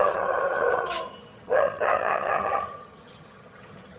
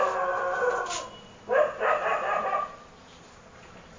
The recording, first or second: second